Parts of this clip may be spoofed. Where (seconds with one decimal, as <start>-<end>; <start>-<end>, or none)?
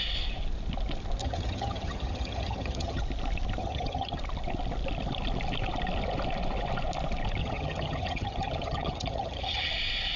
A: 1.2-3.0; 3.6-4.2; 7.4-9.7